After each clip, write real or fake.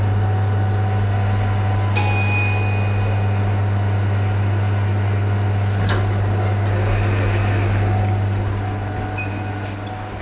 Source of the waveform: real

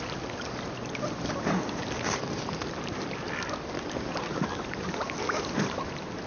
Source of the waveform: real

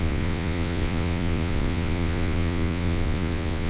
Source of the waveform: fake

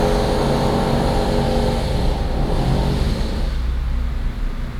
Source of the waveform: real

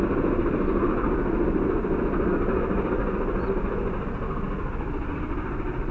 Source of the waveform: real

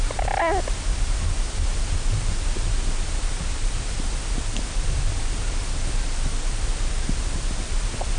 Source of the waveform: real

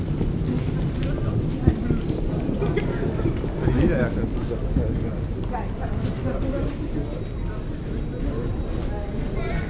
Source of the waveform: real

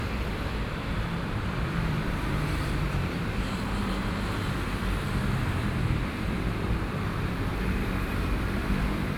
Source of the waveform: fake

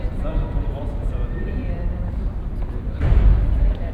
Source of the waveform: fake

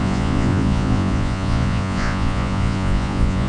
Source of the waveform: fake